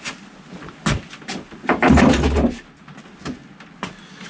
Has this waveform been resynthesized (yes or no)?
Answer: no